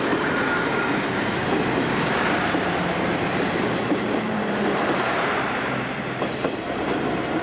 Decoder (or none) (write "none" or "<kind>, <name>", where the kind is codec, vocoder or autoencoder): vocoder, BigVGAN v2